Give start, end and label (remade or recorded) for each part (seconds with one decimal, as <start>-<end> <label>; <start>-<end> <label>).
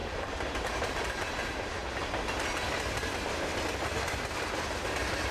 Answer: 0.0-1.8 remade; 1.8-5.3 recorded